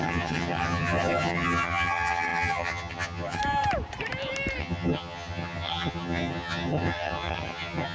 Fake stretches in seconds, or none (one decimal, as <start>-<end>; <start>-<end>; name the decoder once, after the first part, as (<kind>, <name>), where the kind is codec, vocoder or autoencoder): 0.0-3.4 (vocoder, HiFi-GAN); 4.6-7.9